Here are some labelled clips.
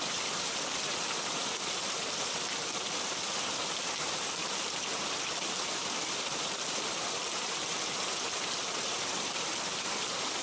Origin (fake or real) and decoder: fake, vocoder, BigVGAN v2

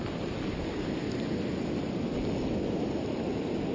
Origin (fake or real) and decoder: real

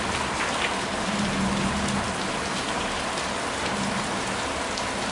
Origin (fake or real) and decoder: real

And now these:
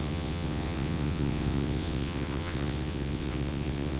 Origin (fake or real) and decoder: fake, vocoder, WaveNeXt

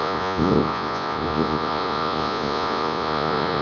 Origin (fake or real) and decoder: fake, vocoder, Vocos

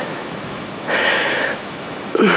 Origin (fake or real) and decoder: fake, autoencoder, DAC-VAE